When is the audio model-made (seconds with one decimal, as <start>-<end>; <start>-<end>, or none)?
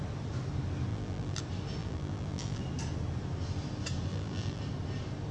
0.9-1.4; 1.8-2.6; 4.1-4.6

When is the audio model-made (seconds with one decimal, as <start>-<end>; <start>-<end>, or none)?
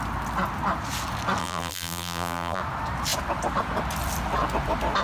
1.4-2.6